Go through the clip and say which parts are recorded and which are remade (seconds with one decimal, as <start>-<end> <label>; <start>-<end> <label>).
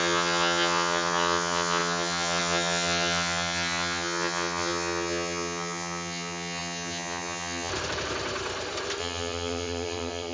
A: 0.0-7.7 remade; 7.7-9.0 recorded; 9.0-10.3 remade